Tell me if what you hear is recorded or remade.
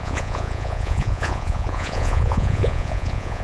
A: remade